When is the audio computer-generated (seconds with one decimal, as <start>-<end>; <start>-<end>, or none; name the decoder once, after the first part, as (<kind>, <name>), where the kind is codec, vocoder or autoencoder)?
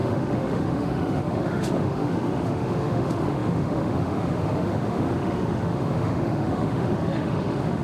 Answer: 0.0-7.8 (autoencoder, DAC-VAE)